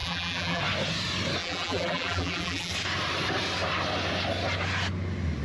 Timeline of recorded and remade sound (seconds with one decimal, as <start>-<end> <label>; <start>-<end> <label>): 0.0-0.6 remade; 0.6-1.4 recorded; 1.4-2.7 remade; 2.7-5.4 recorded